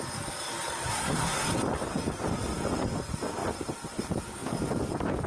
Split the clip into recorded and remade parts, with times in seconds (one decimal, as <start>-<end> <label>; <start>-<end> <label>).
0.0-0.9 recorded; 0.9-1.5 remade; 1.5-5.3 recorded